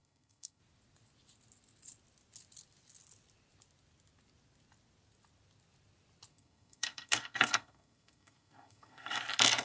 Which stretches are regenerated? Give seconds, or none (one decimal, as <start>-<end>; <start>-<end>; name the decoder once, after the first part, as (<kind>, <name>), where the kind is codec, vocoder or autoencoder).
0.0-0.6 (codec, SNAC); 6.3-9.2